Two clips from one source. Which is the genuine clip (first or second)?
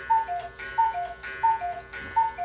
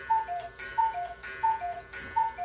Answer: first